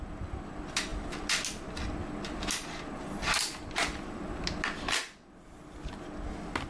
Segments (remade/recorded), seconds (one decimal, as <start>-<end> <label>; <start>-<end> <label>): 0.0-6.7 recorded